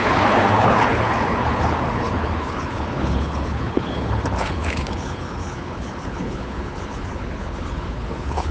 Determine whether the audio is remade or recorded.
remade